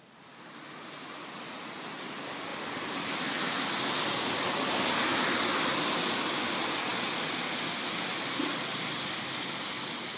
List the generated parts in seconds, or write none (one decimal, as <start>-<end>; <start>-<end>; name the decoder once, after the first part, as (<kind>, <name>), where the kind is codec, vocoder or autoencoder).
none